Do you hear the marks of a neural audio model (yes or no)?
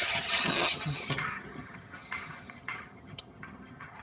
yes